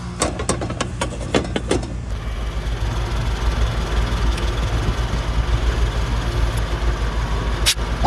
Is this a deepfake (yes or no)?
no